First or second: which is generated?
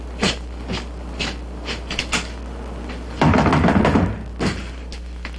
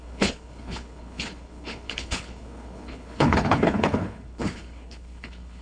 second